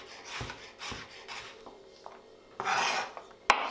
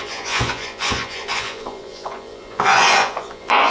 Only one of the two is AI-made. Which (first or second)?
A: second